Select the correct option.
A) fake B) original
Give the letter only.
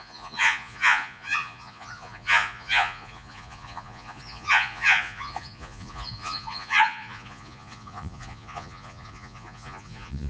A